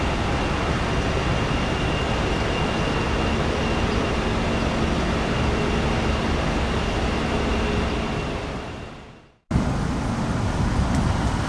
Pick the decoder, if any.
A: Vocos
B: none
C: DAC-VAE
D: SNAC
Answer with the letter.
B